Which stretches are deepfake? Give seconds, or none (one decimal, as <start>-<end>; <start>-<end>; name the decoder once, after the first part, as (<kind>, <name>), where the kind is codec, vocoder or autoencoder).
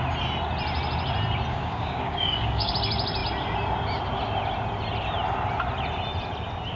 1.5-2.7 (codec, DAC)